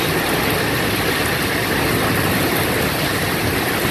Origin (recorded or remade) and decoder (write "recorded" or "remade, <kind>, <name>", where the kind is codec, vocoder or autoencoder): recorded